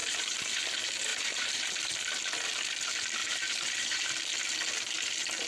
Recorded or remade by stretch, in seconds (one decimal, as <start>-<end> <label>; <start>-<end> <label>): 0.0-0.6 remade; 0.6-1.1 recorded; 1.1-1.9 remade; 1.9-3.2 recorded; 3.2-4.1 remade; 4.1-5.5 recorded